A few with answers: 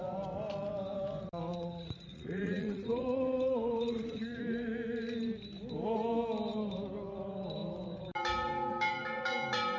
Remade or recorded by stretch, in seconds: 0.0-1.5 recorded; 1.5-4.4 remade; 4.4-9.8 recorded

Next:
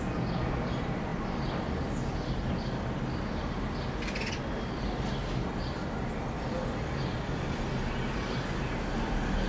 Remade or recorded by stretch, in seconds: 0.0-9.5 recorded

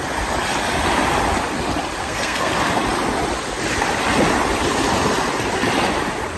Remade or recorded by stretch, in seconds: 0.0-2.0 recorded; 2.0-2.5 remade; 2.5-6.4 recorded

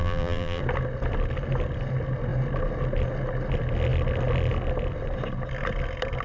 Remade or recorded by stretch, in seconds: 0.0-0.6 remade; 0.6-6.2 recorded

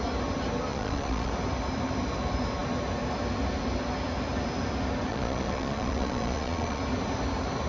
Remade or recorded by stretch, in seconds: 0.0-0.7 recorded; 0.7-1.3 remade; 1.3-5.1 recorded; 5.1-6.8 remade; 6.8-7.7 recorded